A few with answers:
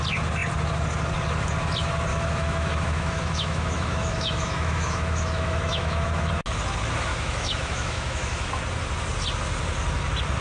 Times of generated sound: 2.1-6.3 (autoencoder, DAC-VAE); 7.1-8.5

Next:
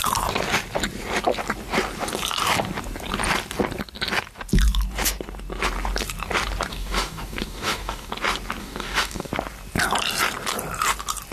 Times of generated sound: 6.7-8.1 (codec, DAC); 8.6-9.3

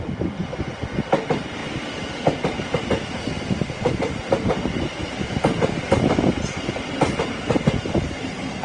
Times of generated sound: none

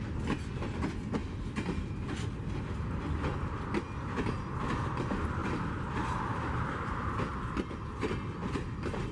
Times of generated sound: 5.4-7.0 (vocoder, BigVGAN v2)